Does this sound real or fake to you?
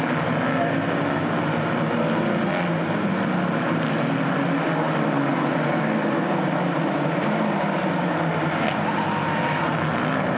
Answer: real